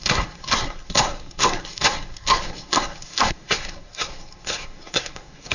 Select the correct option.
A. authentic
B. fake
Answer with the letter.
B